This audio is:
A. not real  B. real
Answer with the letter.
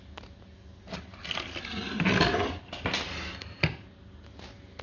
B